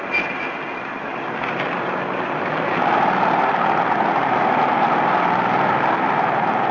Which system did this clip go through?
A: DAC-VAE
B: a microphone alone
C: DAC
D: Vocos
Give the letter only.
B